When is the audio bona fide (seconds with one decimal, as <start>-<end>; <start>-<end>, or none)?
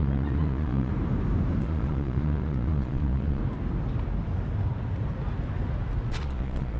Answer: 0.9-1.6; 3.4-6.1